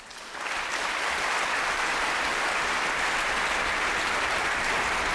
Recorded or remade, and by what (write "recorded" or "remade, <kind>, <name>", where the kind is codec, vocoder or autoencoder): recorded